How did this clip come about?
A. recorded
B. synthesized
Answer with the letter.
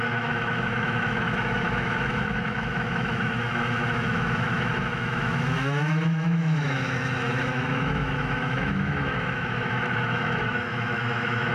B